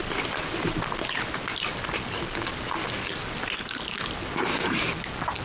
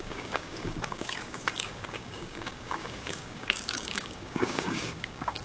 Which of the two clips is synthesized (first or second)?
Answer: second